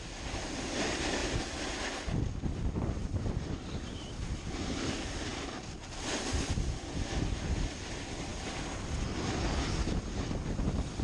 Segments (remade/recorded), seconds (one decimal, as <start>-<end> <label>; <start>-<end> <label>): 0.0-11.0 recorded